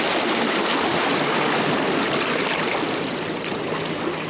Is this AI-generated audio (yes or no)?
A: no